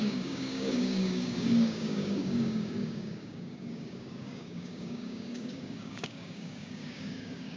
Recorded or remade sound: remade